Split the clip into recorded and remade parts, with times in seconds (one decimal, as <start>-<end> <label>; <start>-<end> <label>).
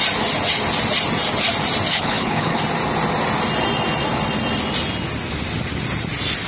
0.0-1.9 recorded; 1.9-2.6 remade; 2.6-6.5 recorded